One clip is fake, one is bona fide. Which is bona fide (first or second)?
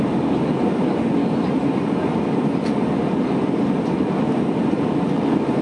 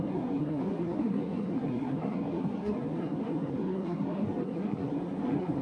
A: first